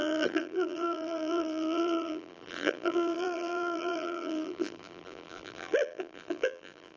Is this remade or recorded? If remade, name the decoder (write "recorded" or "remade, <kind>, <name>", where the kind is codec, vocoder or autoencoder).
remade, vocoder, BigVGAN v2